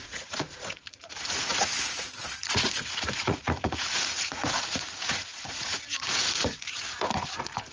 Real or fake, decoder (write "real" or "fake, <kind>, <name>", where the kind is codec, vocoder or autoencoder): fake, vocoder, Vocos